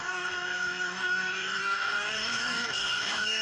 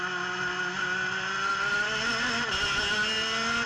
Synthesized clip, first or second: first